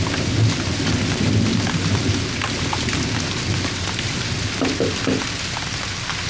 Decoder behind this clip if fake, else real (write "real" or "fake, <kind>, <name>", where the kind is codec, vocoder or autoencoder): real